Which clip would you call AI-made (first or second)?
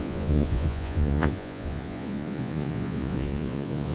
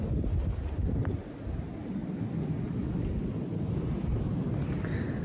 first